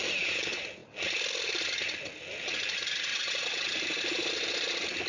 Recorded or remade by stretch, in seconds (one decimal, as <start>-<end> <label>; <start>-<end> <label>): 0.0-3.1 recorded; 3.1-3.7 remade; 3.7-5.1 recorded